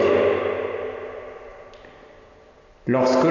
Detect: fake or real real